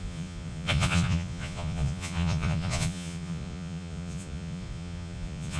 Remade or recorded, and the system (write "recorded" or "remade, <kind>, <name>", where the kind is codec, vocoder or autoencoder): remade, vocoder, Vocos